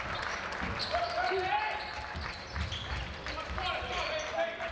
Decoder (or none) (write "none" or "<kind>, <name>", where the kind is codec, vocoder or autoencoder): none